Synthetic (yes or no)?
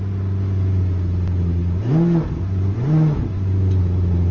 no